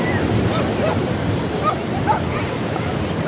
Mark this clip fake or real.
real